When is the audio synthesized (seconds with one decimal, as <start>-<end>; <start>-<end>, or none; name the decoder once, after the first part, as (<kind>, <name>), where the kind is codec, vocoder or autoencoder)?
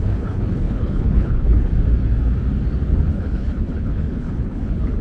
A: 0.0-1.7 (codec, HILCodec); 3.1-5.0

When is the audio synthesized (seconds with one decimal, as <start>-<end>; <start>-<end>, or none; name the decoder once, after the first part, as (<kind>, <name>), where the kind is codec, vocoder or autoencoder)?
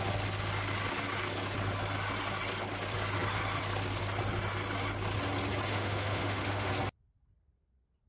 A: 5.7-6.7 (autoencoder, DAC-VAE)